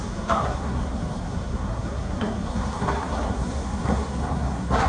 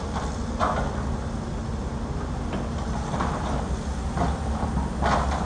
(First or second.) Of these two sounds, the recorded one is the second